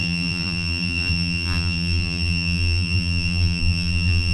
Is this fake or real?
fake